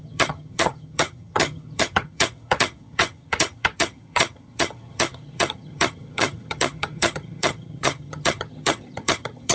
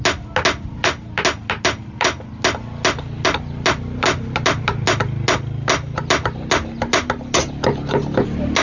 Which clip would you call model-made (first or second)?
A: first